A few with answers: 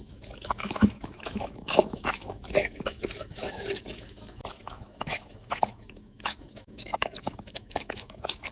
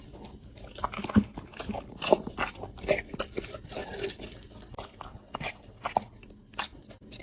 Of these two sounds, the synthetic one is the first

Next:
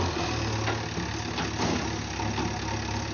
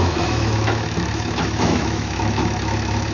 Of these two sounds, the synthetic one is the second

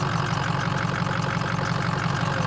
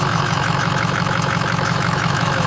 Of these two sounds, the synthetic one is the second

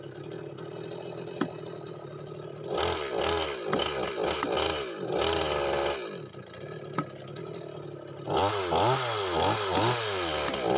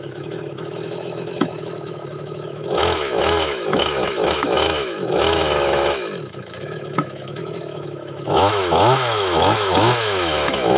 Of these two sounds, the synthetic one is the second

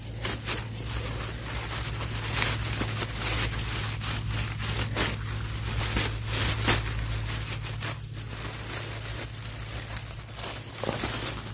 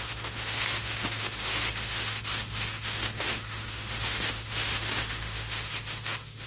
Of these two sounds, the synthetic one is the second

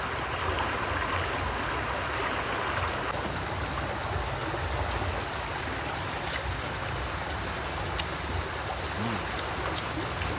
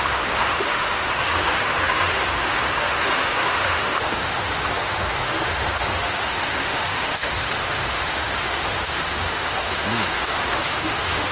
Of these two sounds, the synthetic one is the second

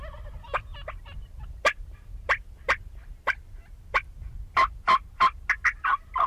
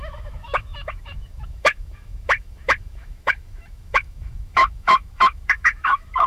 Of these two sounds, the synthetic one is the second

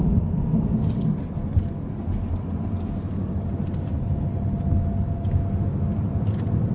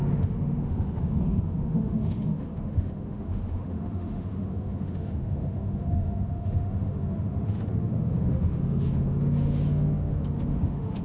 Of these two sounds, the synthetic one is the second